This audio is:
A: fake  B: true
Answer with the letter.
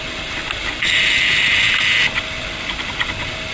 B